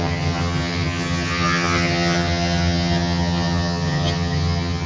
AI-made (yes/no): yes